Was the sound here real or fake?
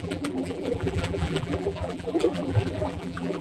fake